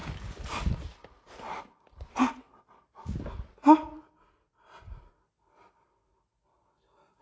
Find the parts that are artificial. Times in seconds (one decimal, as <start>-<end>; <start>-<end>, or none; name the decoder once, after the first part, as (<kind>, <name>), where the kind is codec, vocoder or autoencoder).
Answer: none